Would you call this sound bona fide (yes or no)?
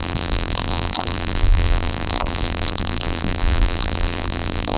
no